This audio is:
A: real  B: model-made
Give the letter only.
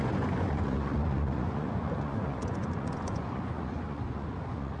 B